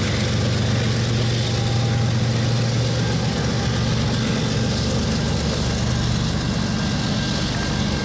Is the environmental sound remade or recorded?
recorded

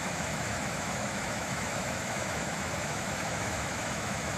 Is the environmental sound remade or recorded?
remade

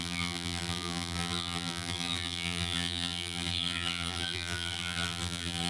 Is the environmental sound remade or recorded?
remade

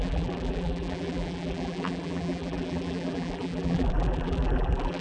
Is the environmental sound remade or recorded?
remade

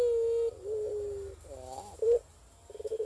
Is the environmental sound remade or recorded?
recorded